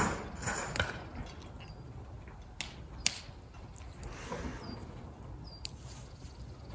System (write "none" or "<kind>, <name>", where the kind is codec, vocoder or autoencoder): none